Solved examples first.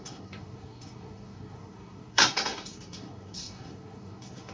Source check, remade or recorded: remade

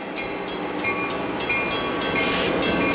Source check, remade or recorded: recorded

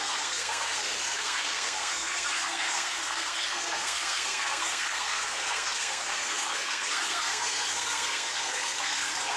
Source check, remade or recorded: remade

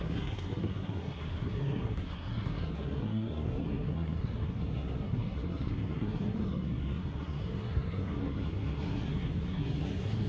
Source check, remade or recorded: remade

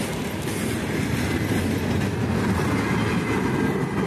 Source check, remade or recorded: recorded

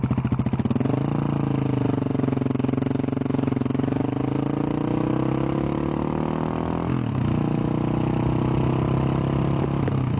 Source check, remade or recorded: recorded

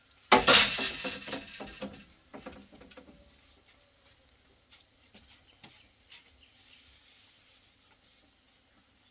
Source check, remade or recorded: recorded